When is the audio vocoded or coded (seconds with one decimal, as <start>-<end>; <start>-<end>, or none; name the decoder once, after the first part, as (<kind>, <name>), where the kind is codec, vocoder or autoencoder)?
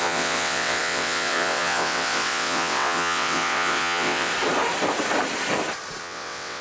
0.0-4.3 (vocoder, WaveNeXt); 6.0-6.6